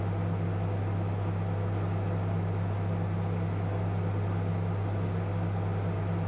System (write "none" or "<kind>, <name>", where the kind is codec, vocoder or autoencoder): none